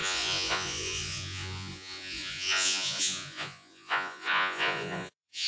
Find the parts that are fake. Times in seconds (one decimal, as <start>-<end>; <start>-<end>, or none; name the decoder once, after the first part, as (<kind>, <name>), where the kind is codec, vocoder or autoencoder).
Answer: 0.0-5.5 (vocoder, Vocos)

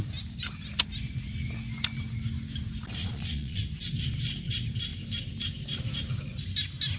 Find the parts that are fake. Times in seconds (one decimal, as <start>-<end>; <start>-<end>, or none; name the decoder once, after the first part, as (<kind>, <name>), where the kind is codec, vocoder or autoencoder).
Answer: 3.0-3.6 (vocoder, Vocos)

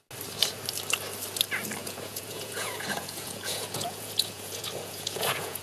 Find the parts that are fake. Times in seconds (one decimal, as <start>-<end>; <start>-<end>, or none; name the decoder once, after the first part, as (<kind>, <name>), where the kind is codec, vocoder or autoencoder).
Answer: 1.8-5.6 (vocoder, Vocos)

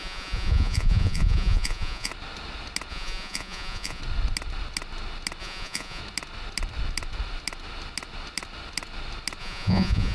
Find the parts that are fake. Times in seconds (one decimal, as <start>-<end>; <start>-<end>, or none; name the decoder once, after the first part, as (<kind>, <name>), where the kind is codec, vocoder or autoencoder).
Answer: 0.0-2.1 (vocoder, Vocos); 2.9-4.0; 5.4-6.0; 9.4-10.1

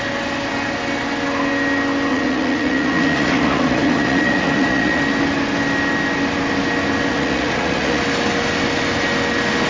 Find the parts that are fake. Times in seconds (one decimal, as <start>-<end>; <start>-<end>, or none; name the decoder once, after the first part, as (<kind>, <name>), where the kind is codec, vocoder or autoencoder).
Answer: 2.1-5.0 (vocoder, Vocos); 7.1-8.0